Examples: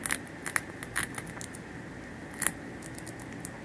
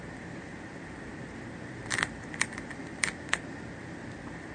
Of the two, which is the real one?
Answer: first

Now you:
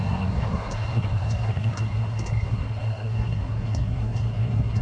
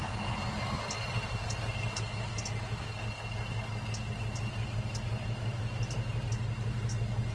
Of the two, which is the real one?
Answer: second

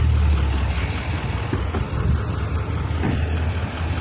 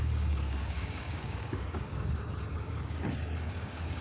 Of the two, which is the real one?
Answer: first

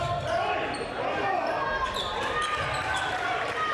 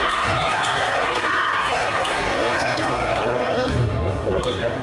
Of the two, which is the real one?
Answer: first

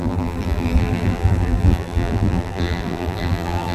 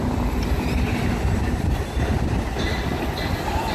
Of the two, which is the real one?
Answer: second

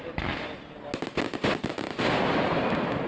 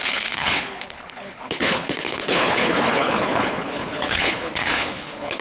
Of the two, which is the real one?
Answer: first